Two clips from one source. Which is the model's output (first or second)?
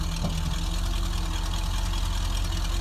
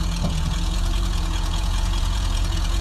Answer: second